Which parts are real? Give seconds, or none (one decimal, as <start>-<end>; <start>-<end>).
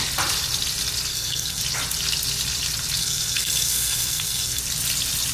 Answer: 0.0-1.1; 1.6-3.0; 4.6-5.3